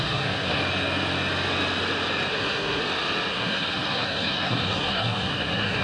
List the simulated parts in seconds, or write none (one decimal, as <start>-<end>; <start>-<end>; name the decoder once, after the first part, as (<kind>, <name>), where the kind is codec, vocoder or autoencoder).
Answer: 0.0-0.6 (codec, SNAC); 2.3-2.8; 3.3-5.8